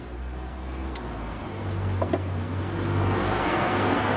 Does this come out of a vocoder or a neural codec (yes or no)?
yes